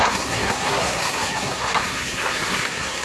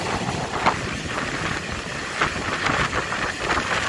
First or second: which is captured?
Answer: second